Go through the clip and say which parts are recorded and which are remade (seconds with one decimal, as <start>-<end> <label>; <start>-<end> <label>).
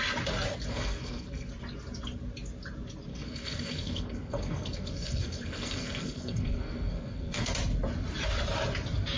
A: 0.0-0.7 recorded; 0.7-1.5 remade; 1.5-3.1 recorded; 3.1-7.5 remade; 7.5-9.2 recorded